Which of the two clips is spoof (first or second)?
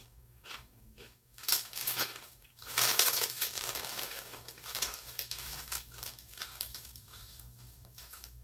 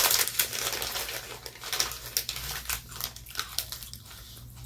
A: first